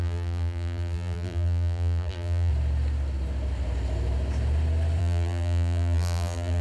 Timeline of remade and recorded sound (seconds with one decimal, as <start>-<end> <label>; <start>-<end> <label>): 0.0-2.5 remade; 2.5-5.0 recorded; 5.0-6.6 remade